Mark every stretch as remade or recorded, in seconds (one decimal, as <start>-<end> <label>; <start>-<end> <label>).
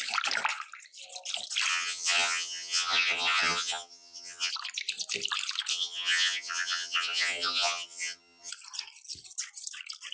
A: 0.0-1.7 recorded; 1.7-4.5 remade; 4.5-5.7 recorded; 5.7-8.5 remade; 8.5-10.1 recorded